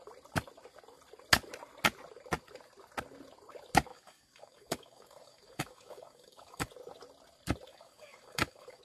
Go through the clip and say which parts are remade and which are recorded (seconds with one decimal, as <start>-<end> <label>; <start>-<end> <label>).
0.0-3.9 recorded; 3.9-6.7 remade; 6.7-7.7 recorded; 7.7-8.8 remade